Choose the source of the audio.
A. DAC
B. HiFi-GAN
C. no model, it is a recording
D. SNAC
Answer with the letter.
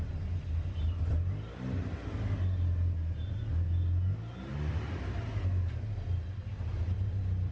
C